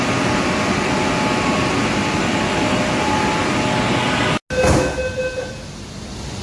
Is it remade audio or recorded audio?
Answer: recorded